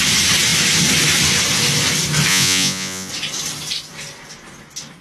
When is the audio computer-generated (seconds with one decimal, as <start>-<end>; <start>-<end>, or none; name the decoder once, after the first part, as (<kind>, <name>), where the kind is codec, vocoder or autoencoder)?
2.3-3.1 (vocoder, Vocos)